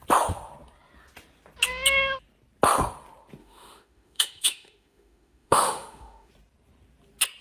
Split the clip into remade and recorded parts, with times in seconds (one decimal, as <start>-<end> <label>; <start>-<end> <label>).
0.0-3.4 recorded; 3.4-6.3 remade; 6.3-7.4 recorded